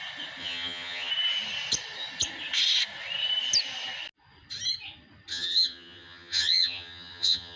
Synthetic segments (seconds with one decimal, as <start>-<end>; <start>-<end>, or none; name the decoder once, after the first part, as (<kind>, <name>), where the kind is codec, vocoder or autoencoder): 0.4-1.1 (vocoder, HiFi-GAN); 5.3-7.6